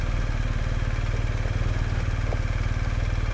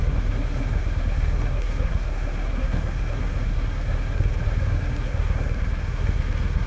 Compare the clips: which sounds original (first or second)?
first